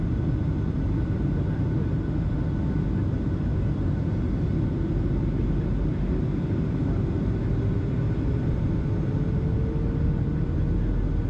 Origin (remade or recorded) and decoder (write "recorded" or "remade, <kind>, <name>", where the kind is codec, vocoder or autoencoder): recorded